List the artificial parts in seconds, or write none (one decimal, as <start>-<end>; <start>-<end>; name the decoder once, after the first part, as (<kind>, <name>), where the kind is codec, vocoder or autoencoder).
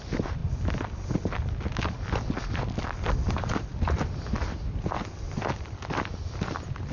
none